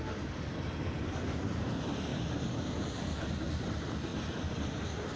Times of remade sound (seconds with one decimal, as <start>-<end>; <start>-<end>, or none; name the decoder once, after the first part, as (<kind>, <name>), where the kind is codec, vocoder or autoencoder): 0.0-4.1 (vocoder, BigVGAN v2)